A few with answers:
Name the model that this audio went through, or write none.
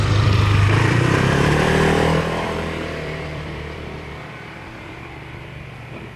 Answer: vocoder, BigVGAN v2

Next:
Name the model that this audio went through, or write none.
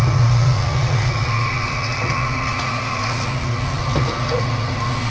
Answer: vocoder, Vocos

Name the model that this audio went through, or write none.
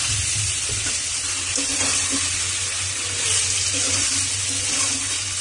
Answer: none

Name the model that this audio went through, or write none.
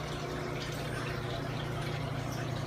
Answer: none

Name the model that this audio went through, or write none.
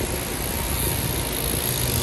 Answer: none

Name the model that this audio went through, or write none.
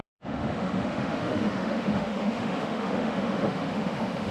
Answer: autoencoder, DAC-VAE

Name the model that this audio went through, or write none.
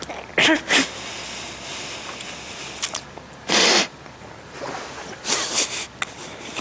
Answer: none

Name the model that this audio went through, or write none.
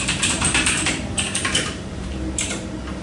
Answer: vocoder, BigVGAN v2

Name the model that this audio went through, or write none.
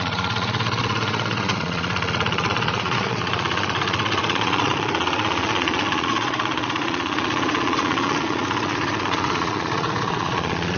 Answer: vocoder, Vocos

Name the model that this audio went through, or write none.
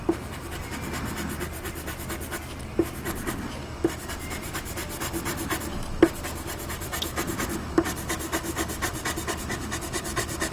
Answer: none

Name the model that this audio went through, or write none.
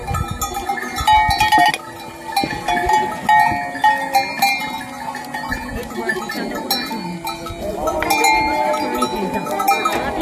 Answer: none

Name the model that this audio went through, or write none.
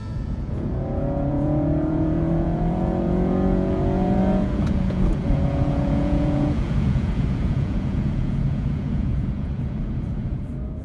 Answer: vocoder, Vocos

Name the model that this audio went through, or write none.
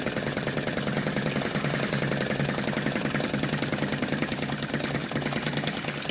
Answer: none